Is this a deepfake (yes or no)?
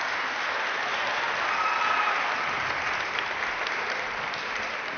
no